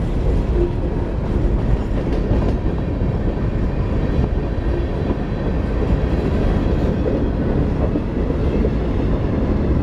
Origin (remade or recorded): recorded